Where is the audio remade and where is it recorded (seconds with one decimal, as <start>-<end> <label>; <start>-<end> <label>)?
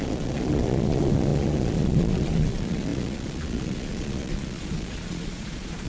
0.0-5.9 remade